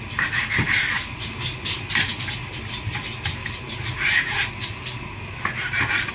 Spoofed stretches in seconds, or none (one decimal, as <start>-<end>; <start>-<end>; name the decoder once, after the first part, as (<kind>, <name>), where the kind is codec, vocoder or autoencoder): none